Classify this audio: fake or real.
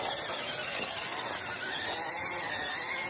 real